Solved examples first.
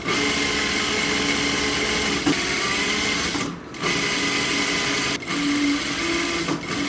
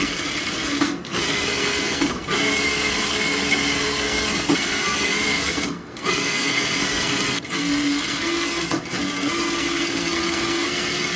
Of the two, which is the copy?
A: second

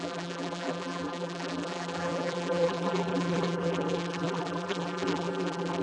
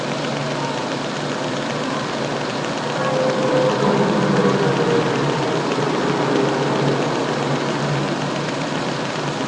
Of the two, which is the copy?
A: first